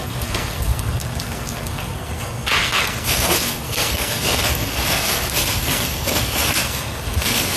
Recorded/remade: remade